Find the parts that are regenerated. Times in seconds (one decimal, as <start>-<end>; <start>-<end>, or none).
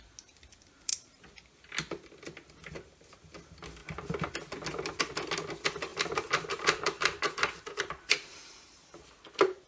3.8-4.3; 5.9-9.1